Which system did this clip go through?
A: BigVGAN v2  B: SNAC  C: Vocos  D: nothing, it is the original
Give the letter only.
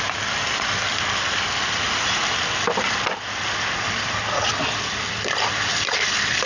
D